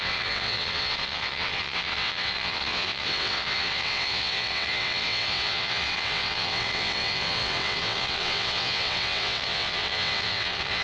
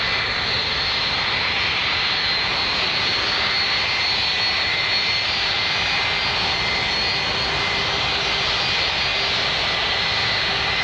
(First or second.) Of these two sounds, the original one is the second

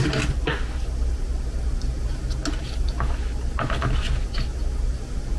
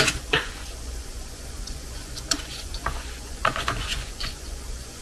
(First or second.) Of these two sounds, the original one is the first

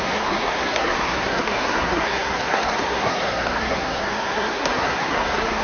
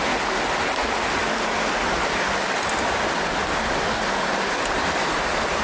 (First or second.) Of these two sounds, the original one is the second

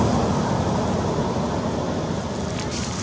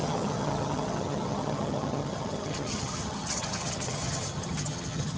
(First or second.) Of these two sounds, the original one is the first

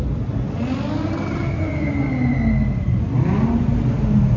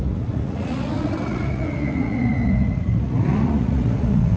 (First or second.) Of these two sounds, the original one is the first